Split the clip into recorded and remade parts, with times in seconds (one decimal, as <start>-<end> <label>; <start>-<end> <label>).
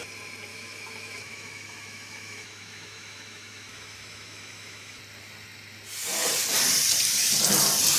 0.0-0.5 recorded; 0.5-5.0 remade; 5.0-8.0 recorded